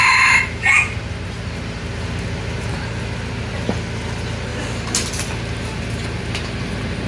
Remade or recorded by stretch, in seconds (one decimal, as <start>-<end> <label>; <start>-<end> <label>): 0.0-7.1 recorded